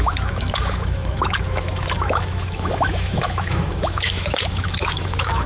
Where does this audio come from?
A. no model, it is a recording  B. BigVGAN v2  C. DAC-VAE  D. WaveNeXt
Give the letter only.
C